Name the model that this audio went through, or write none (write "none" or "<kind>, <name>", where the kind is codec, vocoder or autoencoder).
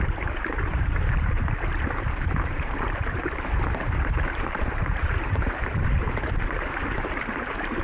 vocoder, BigVGAN v2